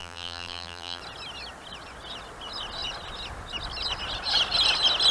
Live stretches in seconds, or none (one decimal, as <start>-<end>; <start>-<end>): 1.0-5.1